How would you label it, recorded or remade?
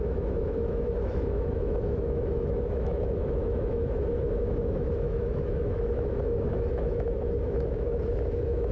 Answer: remade